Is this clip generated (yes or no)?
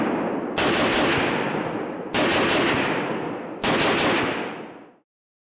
no